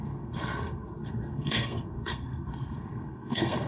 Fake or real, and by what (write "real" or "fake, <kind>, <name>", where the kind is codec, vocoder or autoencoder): fake, codec, SNAC